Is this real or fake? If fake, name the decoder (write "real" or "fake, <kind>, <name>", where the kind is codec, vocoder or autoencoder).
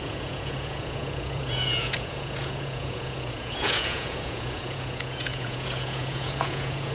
fake, vocoder, Vocos